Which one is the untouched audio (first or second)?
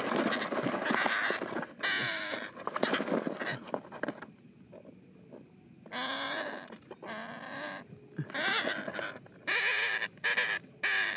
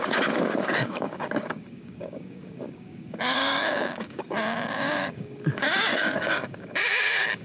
first